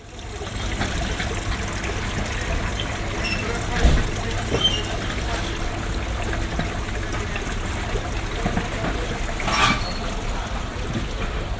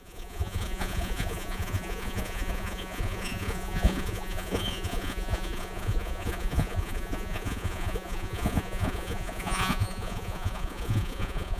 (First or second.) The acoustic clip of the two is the first